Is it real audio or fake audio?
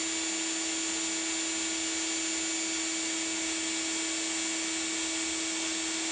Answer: real